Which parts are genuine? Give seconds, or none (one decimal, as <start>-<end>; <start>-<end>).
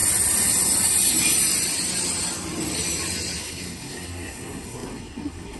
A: 0.0-3.4